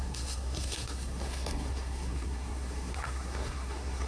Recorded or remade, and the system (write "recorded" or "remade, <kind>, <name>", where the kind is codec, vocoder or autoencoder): remade, codec, SNAC